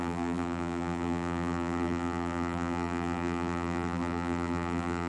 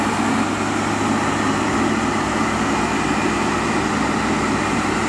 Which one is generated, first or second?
first